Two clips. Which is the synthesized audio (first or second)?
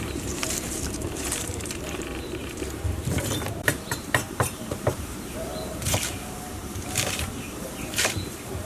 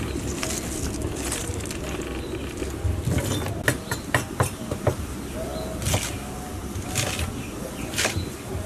first